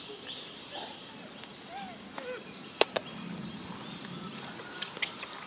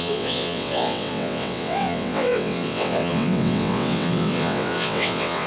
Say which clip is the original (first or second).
first